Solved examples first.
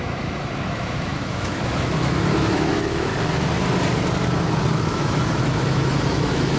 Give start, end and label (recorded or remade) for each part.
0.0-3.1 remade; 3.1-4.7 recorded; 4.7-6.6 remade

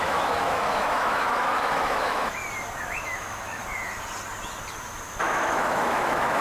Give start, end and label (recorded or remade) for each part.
0.0-2.4 remade; 2.4-3.0 recorded; 3.0-3.6 remade; 3.6-5.2 recorded; 5.2-6.4 remade

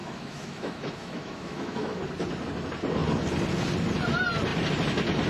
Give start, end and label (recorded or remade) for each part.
0.0-2.0 remade; 2.0-5.3 recorded

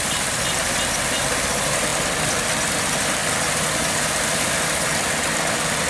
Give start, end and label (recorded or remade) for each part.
0.0-5.9 recorded

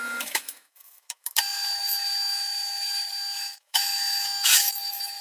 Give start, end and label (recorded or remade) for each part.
0.0-5.2 remade